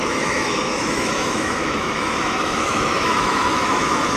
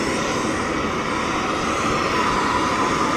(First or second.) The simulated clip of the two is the first